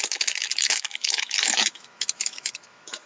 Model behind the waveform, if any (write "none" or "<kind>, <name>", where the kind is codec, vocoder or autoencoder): autoencoder, DAC-VAE